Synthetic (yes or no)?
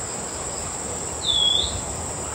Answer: no